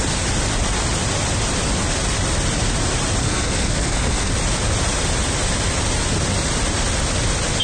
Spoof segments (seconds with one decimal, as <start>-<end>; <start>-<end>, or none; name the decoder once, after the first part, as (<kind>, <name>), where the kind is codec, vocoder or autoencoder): 3.2-4.3 (codec, SNAC)